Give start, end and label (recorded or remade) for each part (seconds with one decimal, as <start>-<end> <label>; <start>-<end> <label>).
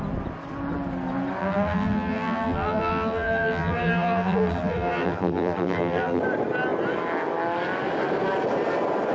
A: 0.0-1.4 recorded; 1.4-6.2 remade; 6.2-9.1 recorded